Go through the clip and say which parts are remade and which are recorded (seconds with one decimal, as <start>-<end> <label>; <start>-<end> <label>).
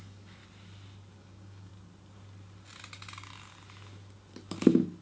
0.0-0.4 remade; 0.4-1.2 recorded; 1.2-1.7 remade; 1.7-5.0 recorded